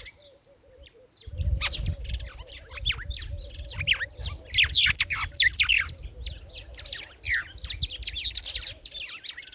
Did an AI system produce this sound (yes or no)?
no